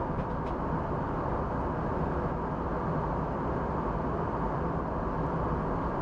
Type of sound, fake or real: real